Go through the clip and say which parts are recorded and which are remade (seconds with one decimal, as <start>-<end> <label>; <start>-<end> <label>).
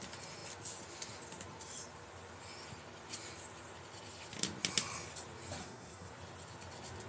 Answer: 0.0-5.6 recorded; 5.6-6.1 remade; 6.1-7.1 recorded